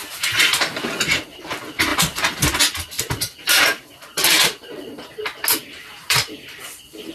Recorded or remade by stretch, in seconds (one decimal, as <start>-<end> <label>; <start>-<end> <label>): 0.0-1.4 recorded; 1.4-4.4 remade; 4.4-6.1 recorded; 6.1-7.1 remade